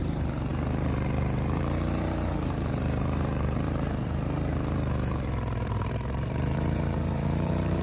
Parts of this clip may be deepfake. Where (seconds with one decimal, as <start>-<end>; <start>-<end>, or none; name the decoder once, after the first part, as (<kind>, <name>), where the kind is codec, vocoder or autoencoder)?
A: 0.0-7.8 (vocoder, BigVGAN v2)